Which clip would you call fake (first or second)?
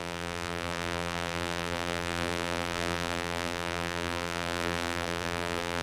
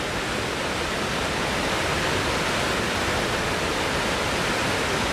first